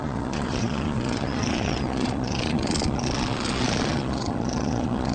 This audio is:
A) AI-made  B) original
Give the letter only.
A